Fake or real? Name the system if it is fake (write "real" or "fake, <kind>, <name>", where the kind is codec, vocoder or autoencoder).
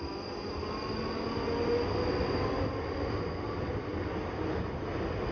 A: real